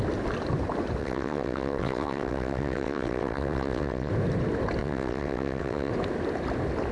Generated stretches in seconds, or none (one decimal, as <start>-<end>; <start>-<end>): 1.0-4.1; 4.8-5.9

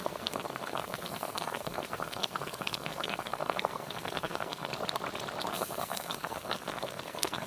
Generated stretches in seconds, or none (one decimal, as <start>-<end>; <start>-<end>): 0.0-4.7; 5.5-7.5

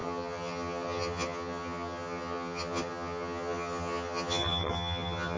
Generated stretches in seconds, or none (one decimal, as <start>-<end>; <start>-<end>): 0.0-5.4

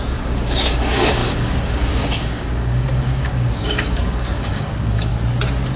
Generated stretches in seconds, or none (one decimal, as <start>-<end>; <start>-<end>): 0.0-5.1

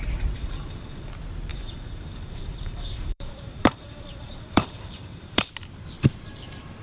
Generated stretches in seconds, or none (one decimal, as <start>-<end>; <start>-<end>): 0.4-1.1; 1.5-5.5

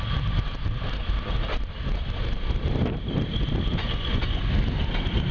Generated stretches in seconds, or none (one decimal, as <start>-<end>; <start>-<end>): 3.7-4.4

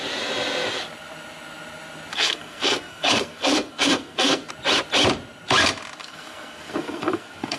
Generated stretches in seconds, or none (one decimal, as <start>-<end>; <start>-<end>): 2.1-4.5; 6.0-7.6